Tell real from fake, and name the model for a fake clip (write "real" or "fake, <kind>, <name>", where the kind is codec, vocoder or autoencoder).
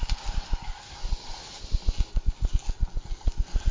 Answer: real